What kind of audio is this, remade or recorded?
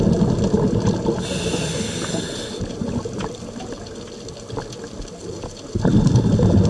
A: recorded